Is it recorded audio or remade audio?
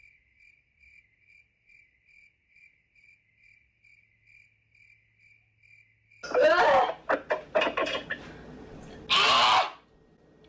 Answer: recorded